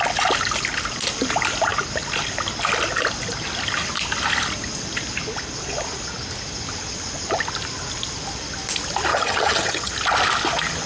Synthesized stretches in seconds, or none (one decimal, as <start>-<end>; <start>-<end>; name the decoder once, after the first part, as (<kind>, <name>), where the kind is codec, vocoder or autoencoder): 9.1-9.9 (vocoder, HiFi-GAN)

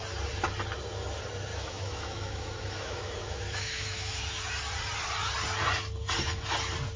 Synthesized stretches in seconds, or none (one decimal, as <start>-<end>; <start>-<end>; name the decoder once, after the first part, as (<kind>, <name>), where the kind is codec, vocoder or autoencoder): 1.5-4.4 (autoencoder, DAC-VAE)

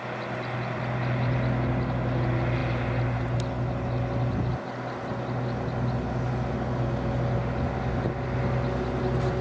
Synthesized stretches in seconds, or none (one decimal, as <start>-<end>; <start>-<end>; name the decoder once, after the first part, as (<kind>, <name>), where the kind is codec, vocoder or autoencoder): none

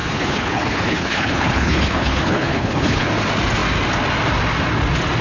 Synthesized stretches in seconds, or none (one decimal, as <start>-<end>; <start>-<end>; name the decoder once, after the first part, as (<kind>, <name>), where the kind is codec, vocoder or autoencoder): 0.0-3.1 (codec, HILCodec)

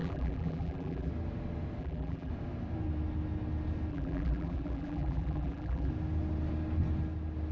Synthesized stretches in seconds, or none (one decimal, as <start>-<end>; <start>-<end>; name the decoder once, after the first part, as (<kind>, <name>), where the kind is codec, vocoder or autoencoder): 0.0-1.1 (vocoder, BigVGAN v2); 1.8-2.3; 3.9-5.9

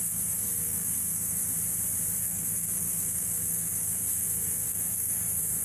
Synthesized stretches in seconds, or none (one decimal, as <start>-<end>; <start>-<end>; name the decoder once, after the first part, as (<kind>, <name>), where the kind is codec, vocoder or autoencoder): 0.0-1.5 (codec, SNAC); 2.2-5.6

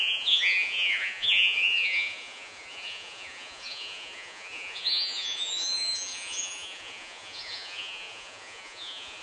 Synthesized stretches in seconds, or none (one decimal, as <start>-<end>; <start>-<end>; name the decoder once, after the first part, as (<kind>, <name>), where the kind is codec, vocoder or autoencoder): 0.0-9.2 (vocoder, Vocos)

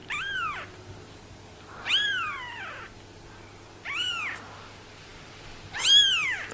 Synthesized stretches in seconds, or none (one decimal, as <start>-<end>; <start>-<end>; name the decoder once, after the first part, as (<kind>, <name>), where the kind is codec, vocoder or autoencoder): none